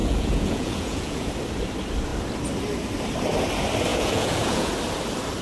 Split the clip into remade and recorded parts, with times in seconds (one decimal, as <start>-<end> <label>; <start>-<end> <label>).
0.0-1.3 remade; 1.3-3.9 recorded; 3.9-4.7 remade; 4.7-5.4 recorded